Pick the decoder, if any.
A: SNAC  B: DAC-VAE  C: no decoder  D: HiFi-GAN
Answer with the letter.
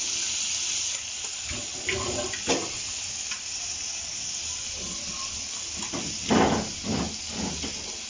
C